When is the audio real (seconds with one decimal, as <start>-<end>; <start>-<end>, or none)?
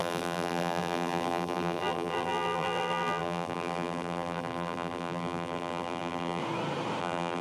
6.4-7.0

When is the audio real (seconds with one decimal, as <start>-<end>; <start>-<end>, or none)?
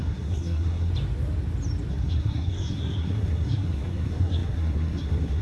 0.9-1.9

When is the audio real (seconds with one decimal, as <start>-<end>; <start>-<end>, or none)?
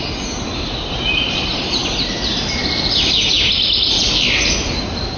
0.0-5.2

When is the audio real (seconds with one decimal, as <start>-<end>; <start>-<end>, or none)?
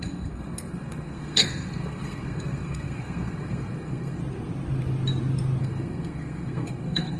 4.2-5.6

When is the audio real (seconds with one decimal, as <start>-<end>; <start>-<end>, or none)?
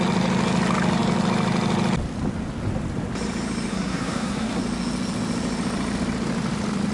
0.0-3.7; 4.6-6.9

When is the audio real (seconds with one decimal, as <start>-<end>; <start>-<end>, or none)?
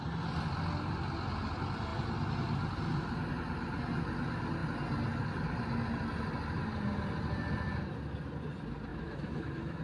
0.0-8.9